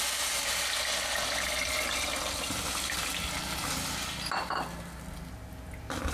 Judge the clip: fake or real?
real